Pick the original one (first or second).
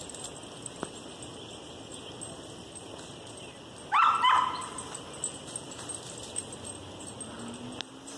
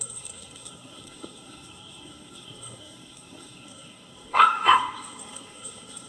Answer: first